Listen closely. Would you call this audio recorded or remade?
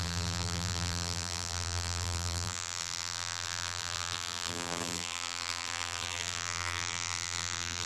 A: remade